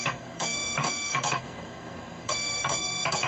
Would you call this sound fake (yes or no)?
yes